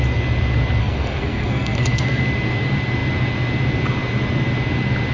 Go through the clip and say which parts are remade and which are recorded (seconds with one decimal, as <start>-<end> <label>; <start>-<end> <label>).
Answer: 0.0-0.8 recorded; 0.8-2.2 remade; 2.2-5.1 recorded

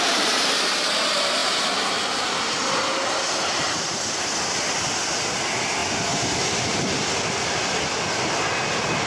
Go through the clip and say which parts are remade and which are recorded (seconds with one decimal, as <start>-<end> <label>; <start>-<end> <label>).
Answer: 0.0-9.1 recorded